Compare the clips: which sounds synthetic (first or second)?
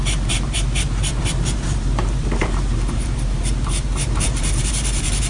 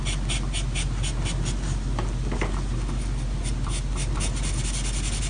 first